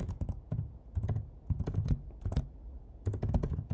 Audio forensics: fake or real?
fake